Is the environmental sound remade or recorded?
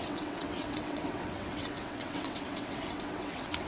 remade